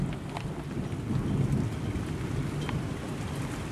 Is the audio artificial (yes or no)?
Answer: no